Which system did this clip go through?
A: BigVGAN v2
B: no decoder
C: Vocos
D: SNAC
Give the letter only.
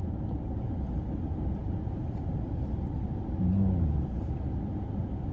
B